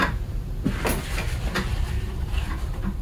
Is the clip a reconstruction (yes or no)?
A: no